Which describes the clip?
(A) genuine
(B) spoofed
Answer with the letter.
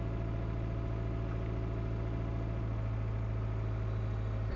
A